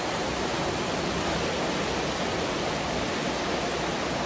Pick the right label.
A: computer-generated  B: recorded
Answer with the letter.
B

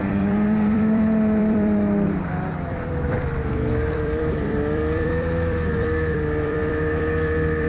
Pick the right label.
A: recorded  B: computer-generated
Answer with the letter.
B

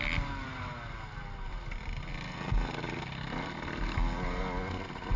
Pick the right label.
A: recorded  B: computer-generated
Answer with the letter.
A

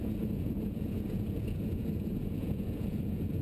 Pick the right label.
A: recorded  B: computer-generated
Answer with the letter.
B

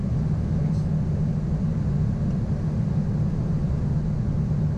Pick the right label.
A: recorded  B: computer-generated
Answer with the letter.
A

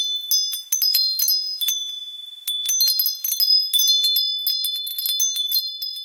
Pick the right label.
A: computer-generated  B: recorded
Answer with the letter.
B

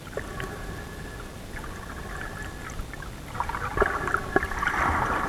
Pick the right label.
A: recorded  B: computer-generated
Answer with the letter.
A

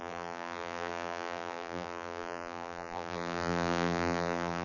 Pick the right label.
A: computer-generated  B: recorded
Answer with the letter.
A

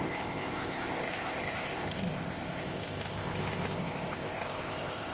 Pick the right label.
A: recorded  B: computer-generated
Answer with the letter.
B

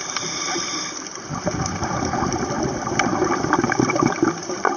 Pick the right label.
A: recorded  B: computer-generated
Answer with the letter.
B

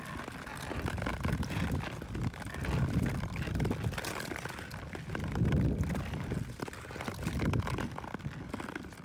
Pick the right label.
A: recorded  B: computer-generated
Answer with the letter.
A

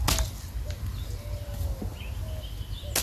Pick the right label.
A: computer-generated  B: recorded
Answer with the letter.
B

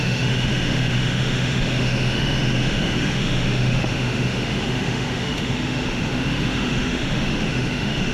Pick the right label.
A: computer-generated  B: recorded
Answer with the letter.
A